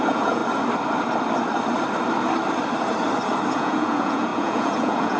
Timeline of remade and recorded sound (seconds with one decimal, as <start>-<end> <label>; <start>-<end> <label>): 0.0-0.4 remade; 0.4-3.5 recorded; 3.5-5.2 remade